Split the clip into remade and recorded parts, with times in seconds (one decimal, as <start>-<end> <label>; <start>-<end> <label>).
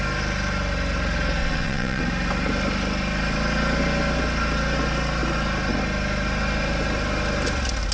0.0-1.4 recorded; 1.4-2.0 remade; 2.0-7.9 recorded